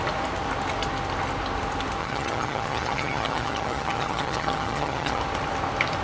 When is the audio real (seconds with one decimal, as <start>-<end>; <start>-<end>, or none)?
0.0-2.0; 5.2-6.0